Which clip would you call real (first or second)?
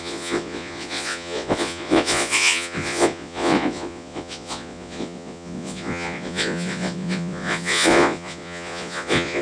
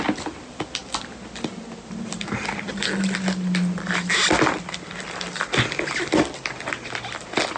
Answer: second